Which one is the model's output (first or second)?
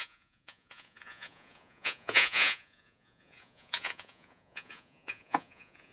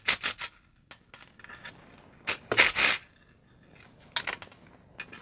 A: first